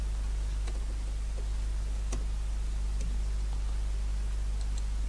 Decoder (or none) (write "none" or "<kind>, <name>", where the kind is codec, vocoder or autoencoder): none